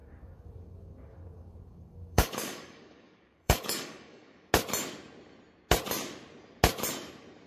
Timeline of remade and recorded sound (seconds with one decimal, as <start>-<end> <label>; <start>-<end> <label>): 0.0-4.5 remade; 4.5-7.5 recorded